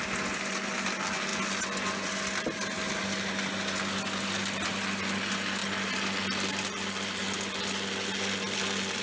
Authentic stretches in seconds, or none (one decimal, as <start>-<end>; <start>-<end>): 0.0-9.0